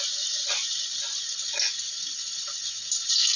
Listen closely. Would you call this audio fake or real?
real